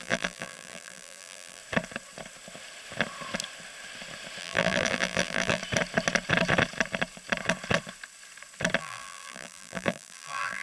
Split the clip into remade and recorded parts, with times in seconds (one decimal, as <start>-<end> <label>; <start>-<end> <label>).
0.0-1.6 remade; 1.6-4.4 recorded; 4.4-5.6 remade; 5.6-8.8 recorded; 8.8-10.6 remade